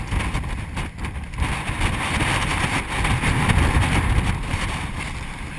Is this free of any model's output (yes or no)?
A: yes